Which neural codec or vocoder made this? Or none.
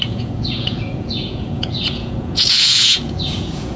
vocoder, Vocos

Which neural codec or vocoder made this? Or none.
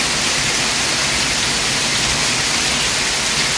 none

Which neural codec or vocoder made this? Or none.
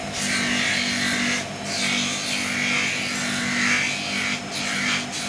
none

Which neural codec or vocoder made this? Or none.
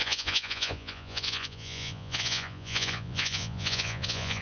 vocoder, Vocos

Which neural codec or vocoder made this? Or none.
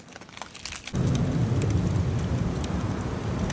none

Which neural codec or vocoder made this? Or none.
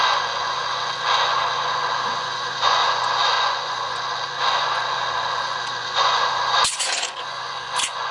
vocoder, Vocos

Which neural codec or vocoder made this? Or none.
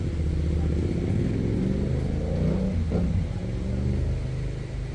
none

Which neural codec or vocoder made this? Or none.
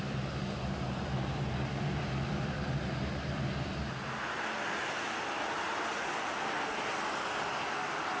none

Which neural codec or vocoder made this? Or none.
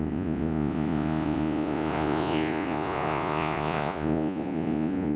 vocoder, Vocos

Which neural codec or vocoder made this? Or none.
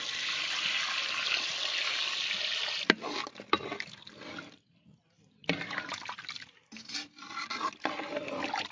none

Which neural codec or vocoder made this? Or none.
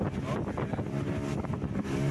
none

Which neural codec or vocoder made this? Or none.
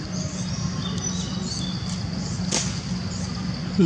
none